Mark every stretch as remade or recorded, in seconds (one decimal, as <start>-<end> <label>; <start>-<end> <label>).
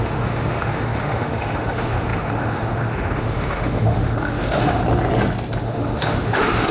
0.0-4.8 remade; 4.8-5.6 recorded; 5.6-6.7 remade